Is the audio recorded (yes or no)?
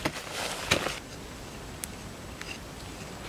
yes